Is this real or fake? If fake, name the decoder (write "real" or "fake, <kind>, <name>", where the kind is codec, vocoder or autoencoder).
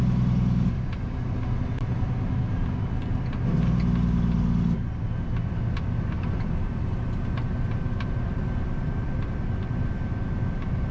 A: real